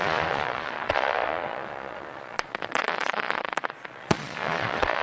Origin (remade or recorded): remade